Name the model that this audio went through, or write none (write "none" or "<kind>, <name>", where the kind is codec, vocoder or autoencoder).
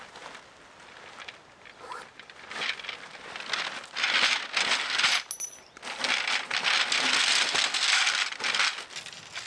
none